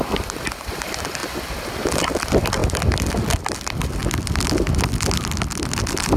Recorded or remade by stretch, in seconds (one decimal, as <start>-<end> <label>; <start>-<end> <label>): 0.0-4.0 remade; 4.0-5.8 recorded; 5.8-6.2 remade